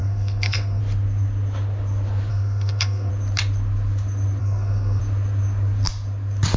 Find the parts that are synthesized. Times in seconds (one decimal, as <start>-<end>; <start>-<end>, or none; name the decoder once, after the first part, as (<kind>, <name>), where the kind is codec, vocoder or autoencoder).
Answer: 0.0-0.8 (codec, SNAC); 2.3-3.1; 4.4-5.0